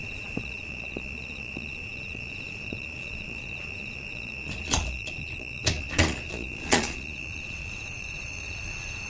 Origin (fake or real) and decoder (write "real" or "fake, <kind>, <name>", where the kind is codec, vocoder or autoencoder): fake, vocoder, Vocos